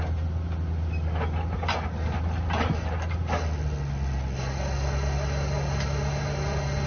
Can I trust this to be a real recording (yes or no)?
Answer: yes